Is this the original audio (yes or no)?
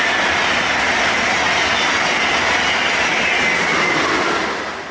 yes